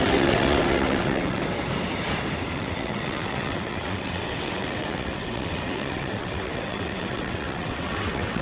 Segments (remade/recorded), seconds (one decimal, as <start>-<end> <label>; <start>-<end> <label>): 0.0-1.4 remade; 1.4-2.5 recorded; 2.5-8.4 remade